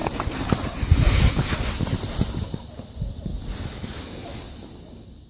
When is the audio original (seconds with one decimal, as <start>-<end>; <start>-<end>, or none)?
0.0-5.3